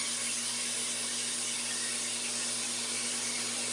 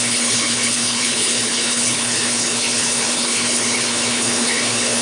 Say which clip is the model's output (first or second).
second